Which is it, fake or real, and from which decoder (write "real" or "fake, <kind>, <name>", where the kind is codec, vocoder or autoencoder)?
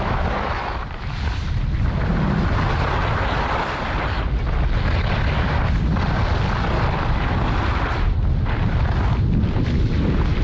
real